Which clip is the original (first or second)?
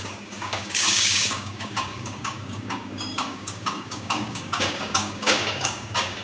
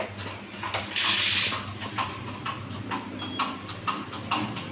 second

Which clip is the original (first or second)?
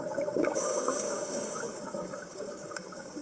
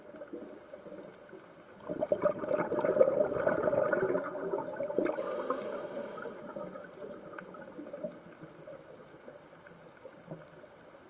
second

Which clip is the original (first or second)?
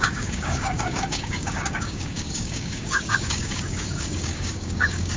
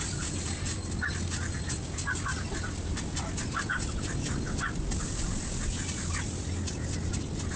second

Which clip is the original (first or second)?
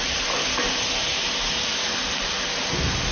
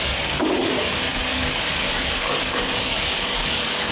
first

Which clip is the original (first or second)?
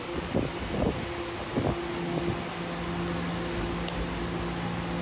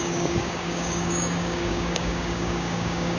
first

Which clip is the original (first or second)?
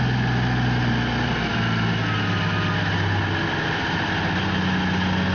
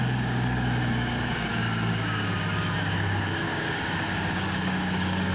first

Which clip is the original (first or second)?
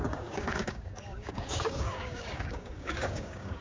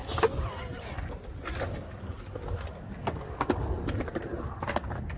second